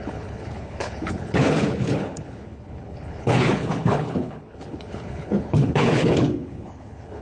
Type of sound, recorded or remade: remade